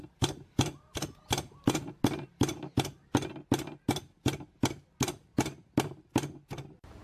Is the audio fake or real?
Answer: real